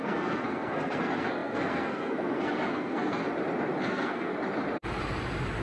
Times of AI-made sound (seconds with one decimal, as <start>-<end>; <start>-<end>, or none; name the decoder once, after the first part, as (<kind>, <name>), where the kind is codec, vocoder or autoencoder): 0.0-3.2 (codec, SNAC); 3.8-4.3